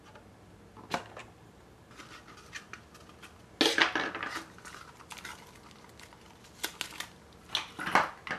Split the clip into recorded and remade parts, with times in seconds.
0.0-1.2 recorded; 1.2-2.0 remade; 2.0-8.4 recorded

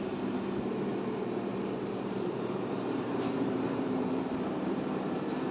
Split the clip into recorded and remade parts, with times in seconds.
0.0-1.5 recorded; 1.5-4.8 remade; 4.8-5.5 recorded